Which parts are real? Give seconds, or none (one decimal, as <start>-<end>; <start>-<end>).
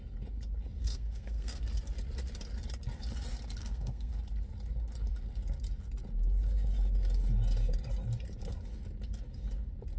0.0-0.8; 1.6-3.6; 4.1-10.0